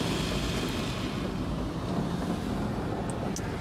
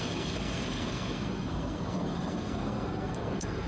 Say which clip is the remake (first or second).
second